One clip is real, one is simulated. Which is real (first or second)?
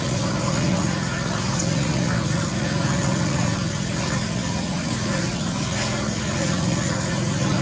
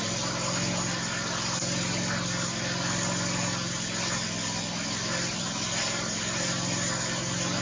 second